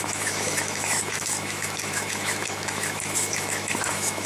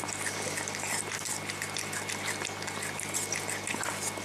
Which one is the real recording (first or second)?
second